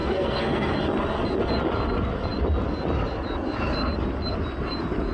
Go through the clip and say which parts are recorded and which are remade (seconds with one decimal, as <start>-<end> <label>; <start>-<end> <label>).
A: 0.0-0.7 remade; 0.7-5.1 recorded